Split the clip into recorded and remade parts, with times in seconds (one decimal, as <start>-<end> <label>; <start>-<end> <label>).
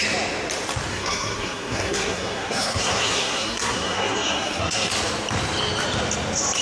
0.0-0.9 recorded; 0.9-4.9 remade; 4.9-6.6 recorded